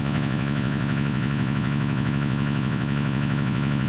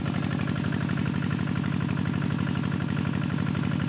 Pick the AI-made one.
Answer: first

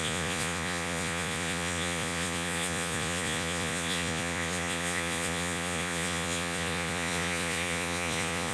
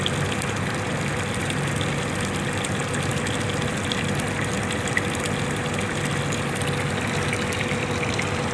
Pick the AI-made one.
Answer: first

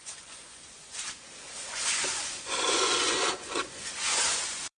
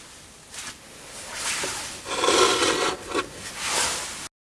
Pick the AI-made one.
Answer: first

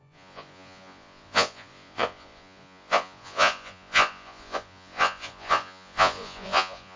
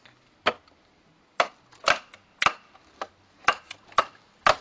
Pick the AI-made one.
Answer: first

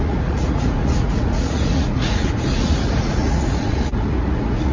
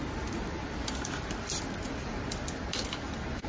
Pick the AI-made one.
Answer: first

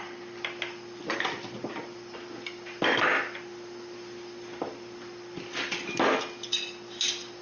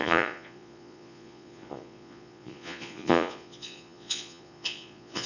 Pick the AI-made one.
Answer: second